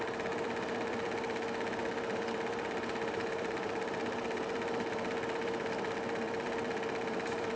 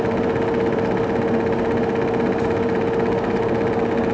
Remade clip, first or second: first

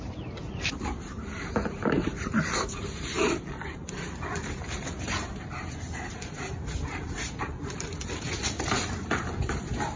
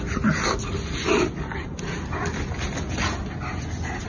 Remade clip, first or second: first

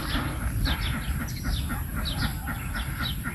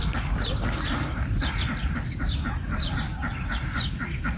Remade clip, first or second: second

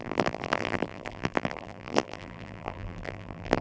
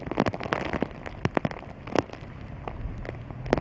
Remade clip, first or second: first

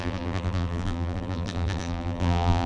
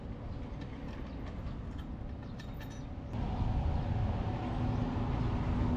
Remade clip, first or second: first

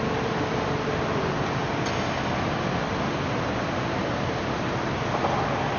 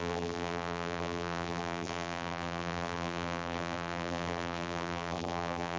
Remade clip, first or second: second